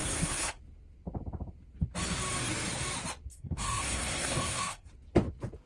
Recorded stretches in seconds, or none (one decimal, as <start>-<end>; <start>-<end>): 0.6-3.3; 4.9-5.7

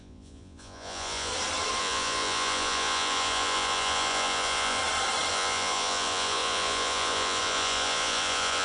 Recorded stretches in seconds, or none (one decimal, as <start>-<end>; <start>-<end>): 1.3-1.8; 4.8-5.3